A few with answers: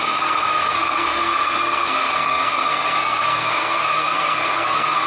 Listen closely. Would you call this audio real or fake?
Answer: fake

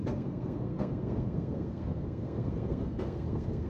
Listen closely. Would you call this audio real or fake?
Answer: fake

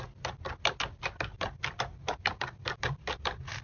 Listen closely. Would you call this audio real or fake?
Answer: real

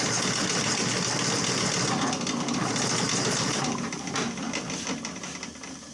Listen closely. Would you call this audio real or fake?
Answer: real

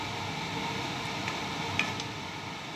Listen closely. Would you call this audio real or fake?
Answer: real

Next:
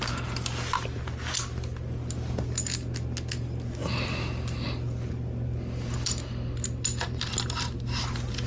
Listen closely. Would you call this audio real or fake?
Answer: real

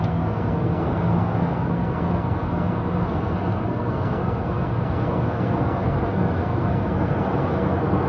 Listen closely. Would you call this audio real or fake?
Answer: fake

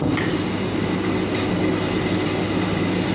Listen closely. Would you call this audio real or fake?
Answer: real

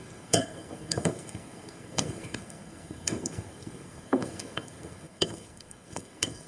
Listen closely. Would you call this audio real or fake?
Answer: fake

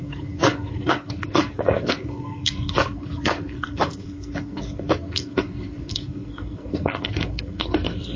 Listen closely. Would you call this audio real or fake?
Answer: fake